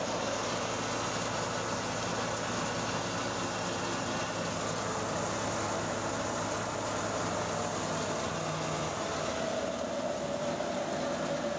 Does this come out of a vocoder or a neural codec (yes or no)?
no